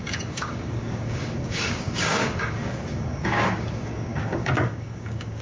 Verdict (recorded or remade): remade